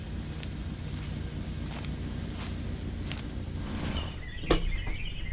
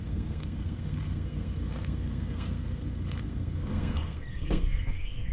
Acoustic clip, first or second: first